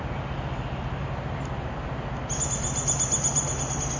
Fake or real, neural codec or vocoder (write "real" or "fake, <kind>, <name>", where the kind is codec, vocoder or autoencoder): real